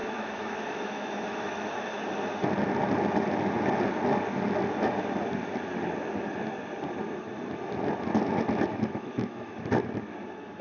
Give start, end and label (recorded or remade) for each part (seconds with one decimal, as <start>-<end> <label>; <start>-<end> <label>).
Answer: 0.0-2.0 remade; 2.0-8.7 recorded; 8.7-9.6 remade; 9.6-10.6 recorded